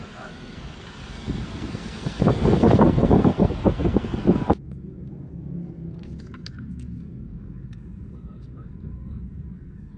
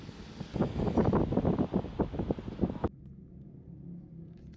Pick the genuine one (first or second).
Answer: second